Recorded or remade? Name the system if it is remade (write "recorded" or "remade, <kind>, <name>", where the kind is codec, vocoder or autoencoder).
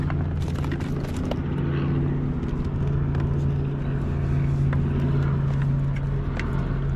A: recorded